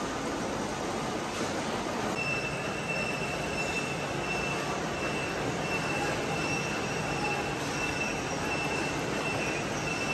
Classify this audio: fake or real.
real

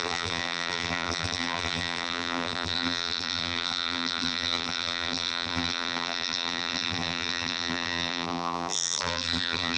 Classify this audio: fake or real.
fake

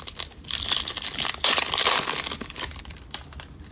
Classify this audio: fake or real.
real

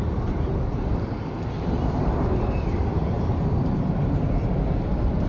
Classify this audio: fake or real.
fake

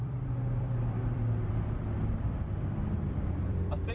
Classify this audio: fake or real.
fake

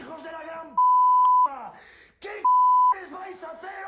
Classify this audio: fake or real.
real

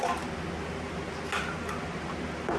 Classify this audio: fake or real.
real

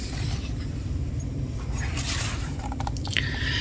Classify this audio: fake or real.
fake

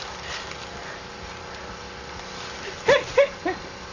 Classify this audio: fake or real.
fake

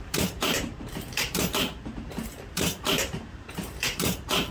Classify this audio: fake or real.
fake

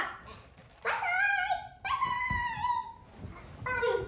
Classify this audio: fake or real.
real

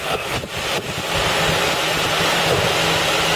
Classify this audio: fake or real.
fake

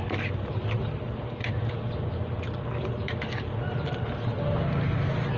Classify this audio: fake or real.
real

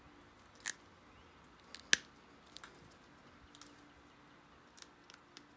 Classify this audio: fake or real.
real